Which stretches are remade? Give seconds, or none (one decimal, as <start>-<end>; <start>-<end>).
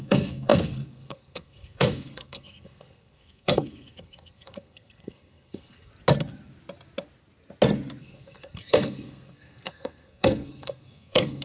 0.0-5.9; 8.0-11.4